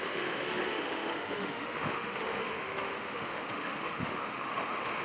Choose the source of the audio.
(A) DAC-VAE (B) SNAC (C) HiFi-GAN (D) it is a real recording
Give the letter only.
A